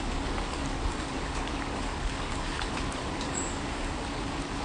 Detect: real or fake fake